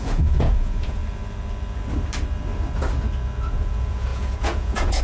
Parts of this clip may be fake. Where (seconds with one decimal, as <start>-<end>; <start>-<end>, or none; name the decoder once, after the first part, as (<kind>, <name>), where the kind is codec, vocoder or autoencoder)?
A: 0.0-1.0 (vocoder, Vocos); 3.5-5.0